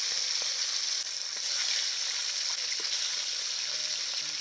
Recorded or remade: recorded